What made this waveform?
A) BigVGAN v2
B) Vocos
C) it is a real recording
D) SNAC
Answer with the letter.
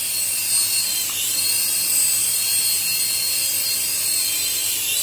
C